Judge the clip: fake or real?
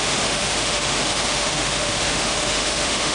fake